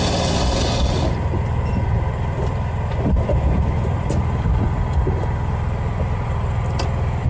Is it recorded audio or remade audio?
remade